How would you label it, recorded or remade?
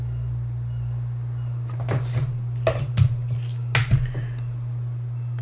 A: recorded